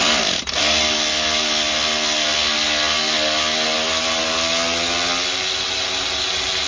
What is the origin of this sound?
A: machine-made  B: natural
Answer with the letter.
B